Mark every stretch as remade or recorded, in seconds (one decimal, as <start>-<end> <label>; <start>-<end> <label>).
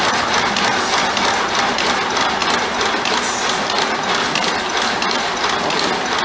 0.0-6.2 recorded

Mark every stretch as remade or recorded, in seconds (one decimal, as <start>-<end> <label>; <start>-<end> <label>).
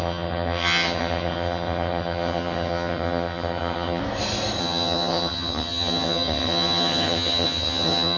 0.0-4.0 remade; 4.0-4.6 recorded; 4.6-8.2 remade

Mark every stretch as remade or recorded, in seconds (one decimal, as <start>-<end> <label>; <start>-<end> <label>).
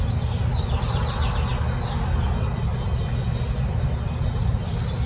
0.0-5.1 recorded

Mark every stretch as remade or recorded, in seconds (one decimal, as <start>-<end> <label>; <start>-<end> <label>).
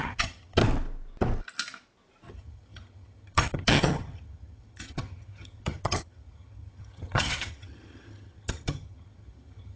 0.0-0.6 remade; 0.6-2.3 recorded; 2.3-9.8 remade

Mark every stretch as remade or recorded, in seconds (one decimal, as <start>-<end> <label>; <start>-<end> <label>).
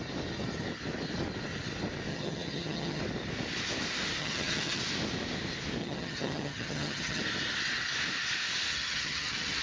0.0-2.1 recorded; 2.1-3.0 remade; 3.0-4.2 recorded; 4.2-4.8 remade; 4.8-5.8 recorded; 5.8-7.2 remade; 7.2-8.7 recorded; 8.7-9.6 remade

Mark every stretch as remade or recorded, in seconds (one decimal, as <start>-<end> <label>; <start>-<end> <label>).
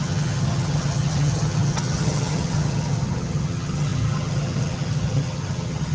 0.0-5.9 remade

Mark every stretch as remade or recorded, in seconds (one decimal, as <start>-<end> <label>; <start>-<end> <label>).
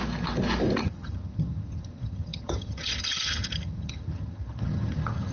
0.0-0.8 recorded; 0.8-5.3 remade